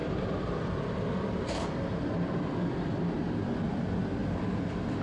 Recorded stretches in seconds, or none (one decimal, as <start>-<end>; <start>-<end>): 3.0-4.2